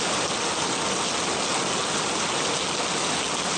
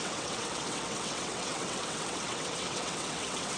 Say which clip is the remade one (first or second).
second